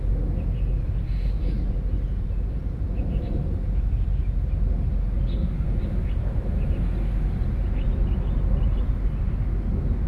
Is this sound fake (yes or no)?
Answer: no